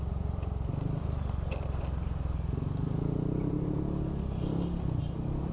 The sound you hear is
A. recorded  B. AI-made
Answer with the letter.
A